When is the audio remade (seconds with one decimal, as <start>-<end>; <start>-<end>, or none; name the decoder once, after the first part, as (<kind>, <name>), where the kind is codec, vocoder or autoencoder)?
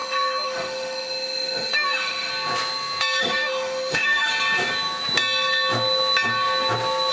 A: 0.0-2.3 (autoencoder, DAC-VAE); 3.2-4.3